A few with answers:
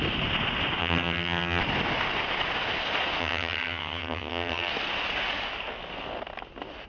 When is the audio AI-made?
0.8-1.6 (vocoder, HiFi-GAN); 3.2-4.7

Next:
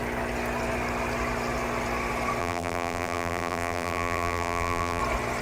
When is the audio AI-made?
2.4-5.0 (vocoder, BigVGAN v2)

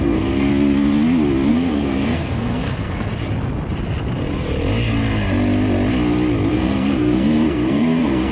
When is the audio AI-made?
0.0-0.5 (codec, SNAC); 1.5-3.1; 6.5-8.3

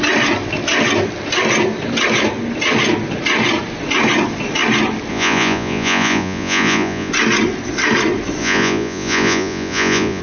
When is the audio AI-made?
5.1-7.1 (vocoder, Vocos); 8.4-10.2

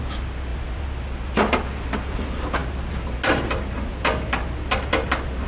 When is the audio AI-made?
none

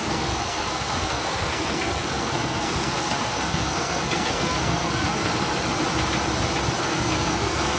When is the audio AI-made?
0.0-5.3 (codec, SNAC); 6.8-7.8

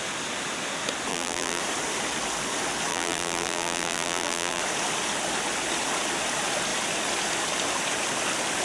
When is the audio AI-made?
1.1-1.6 (vocoder, BigVGAN v2); 2.9-4.6

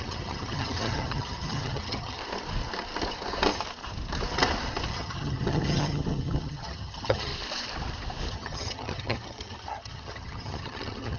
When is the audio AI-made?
0.0-2.2 (vocoder, HiFi-GAN); 4.9-7.3; 8.3-11.2